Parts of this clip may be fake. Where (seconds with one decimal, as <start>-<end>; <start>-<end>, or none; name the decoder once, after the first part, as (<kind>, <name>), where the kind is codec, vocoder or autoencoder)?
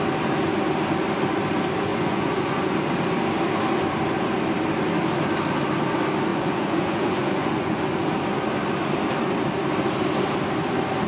1.9-2.6 (vocoder, Vocos); 6.3-7.8